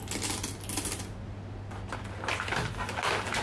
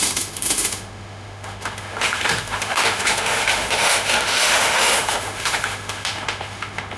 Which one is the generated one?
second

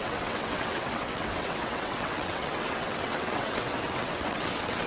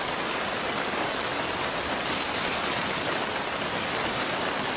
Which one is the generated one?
first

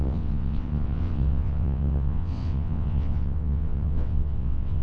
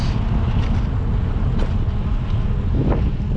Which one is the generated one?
first